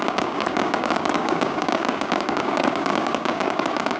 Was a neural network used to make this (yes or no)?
yes